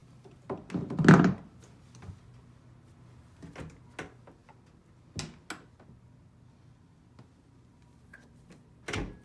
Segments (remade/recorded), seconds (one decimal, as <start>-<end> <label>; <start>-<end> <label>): 0.0-9.2 recorded